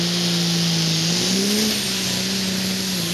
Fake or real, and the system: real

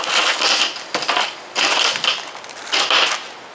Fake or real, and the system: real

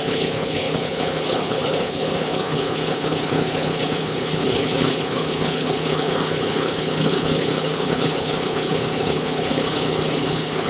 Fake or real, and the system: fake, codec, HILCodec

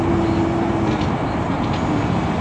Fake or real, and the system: real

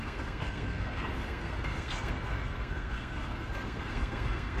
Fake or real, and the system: fake, codec, SNAC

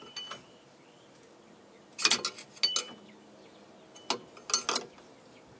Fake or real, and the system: real